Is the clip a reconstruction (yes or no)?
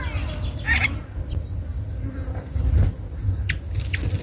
no